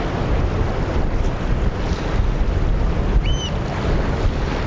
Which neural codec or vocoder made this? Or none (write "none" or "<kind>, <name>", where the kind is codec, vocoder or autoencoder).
none